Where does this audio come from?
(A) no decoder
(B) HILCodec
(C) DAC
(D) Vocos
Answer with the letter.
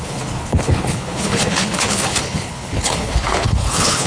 B